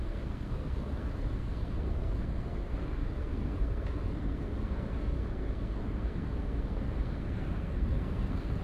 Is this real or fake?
fake